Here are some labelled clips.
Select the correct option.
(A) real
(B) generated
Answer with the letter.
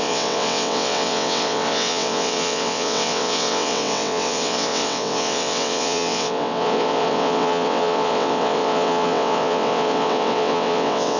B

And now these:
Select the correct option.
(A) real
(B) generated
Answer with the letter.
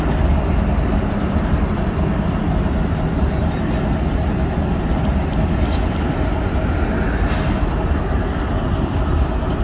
A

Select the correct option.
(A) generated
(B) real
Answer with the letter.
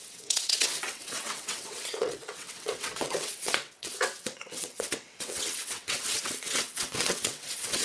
A